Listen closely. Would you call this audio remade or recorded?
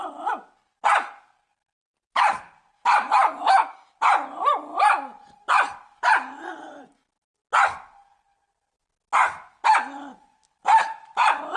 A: recorded